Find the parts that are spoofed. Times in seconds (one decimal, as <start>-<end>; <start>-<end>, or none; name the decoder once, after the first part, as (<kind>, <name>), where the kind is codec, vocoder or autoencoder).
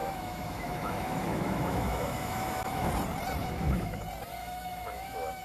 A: 0.0-2.9 (autoencoder, DAC-VAE); 3.4-4.0; 4.4-5.4